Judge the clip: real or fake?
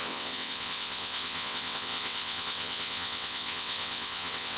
fake